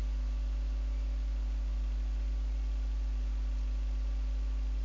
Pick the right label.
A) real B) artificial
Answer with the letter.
A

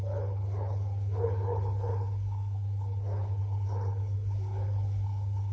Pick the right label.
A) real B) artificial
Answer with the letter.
B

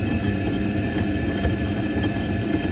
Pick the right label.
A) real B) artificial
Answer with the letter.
B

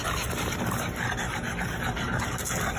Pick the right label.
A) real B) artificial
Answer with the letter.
A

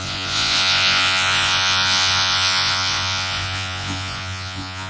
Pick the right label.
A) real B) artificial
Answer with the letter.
B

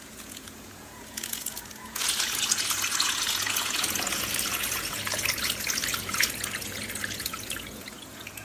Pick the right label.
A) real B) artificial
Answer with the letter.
B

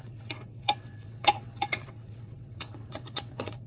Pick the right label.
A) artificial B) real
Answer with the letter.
A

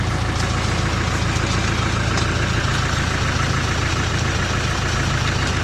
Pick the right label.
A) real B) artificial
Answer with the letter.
A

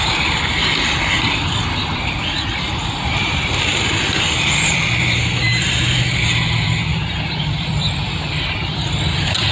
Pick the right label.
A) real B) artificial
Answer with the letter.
B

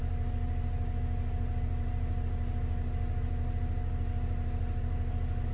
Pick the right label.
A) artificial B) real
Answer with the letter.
B